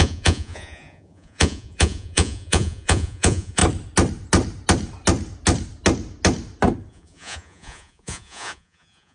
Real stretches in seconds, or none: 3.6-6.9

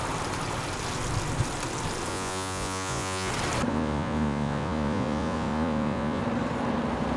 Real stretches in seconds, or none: 0.0-2.1; 3.3-3.7; 6.2-7.2